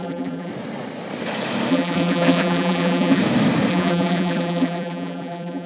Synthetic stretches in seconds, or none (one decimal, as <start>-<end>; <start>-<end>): 0.0-0.5; 1.7-3.2; 3.7-5.7